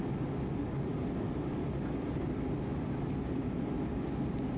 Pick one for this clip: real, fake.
real